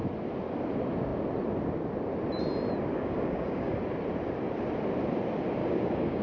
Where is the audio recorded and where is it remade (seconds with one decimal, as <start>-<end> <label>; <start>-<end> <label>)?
0.0-2.9 recorded; 2.9-3.8 remade; 3.8-5.6 recorded; 5.6-6.2 remade